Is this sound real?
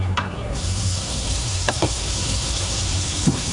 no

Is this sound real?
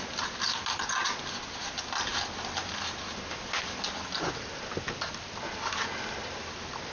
yes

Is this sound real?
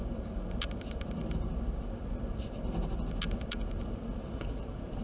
yes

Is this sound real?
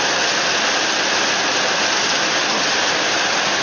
yes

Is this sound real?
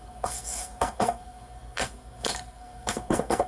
no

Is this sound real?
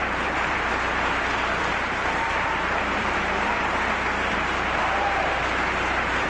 no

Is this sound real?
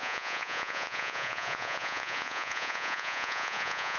no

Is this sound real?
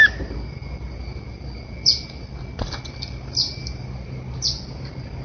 yes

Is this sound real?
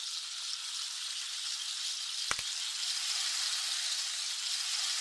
yes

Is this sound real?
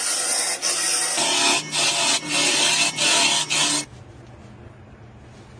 yes